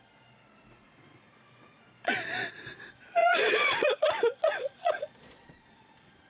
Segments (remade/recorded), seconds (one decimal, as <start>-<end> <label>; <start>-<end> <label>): 0.0-1.0 recorded; 1.0-2.6 remade; 2.6-3.2 recorded; 3.2-6.3 remade